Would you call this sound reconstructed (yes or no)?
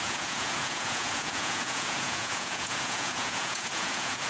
yes